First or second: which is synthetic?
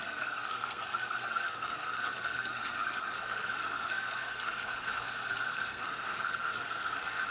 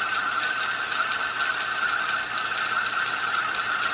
first